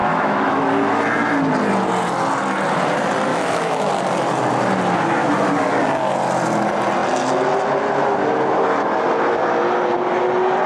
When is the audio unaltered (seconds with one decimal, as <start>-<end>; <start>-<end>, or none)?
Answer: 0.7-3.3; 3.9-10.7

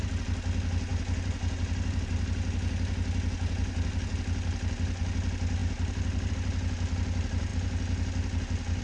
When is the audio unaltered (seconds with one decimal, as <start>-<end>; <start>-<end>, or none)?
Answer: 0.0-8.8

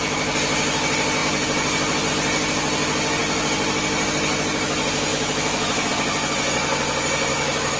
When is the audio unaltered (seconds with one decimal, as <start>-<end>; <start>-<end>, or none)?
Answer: 0.0-5.1; 5.9-7.3